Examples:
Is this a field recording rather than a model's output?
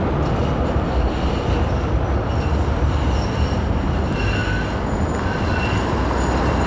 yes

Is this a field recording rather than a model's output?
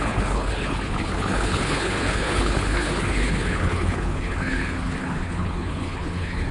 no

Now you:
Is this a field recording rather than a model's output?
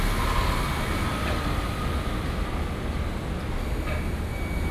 yes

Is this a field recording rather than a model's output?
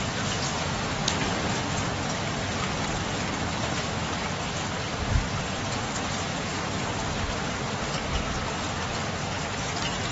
yes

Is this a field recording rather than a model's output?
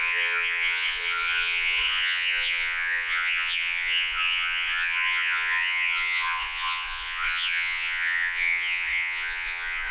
no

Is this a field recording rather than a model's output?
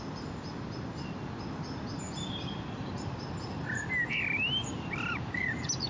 yes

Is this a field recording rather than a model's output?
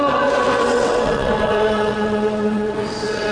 no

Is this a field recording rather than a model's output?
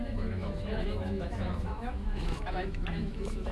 no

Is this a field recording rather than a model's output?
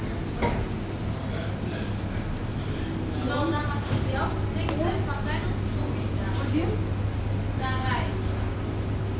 yes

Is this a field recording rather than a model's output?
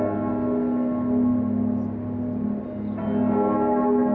yes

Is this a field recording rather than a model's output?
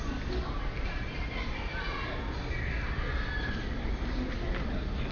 yes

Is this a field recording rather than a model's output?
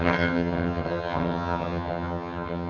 no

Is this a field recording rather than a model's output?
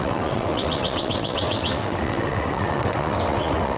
no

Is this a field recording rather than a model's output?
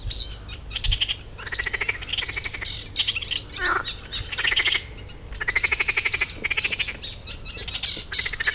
yes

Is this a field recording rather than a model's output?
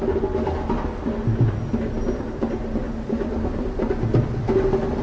yes